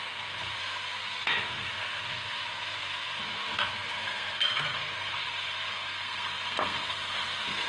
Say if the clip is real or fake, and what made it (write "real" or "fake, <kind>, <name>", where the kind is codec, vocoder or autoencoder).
fake, codec, SNAC